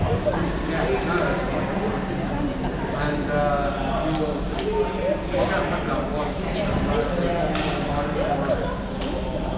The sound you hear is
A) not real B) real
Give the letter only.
B